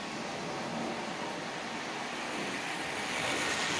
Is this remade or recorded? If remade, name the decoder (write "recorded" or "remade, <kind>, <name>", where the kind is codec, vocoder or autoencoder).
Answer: recorded